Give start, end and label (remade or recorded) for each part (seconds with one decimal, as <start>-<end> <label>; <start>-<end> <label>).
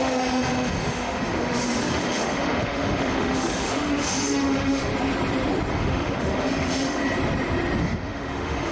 0.0-4.9 remade; 4.9-5.7 recorded; 5.7-7.0 remade; 7.0-7.8 recorded; 7.8-8.7 remade